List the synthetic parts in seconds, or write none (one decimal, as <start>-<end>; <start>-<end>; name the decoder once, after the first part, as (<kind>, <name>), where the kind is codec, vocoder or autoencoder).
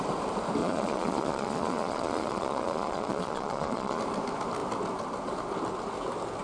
0.6-4.0 (vocoder, Vocos)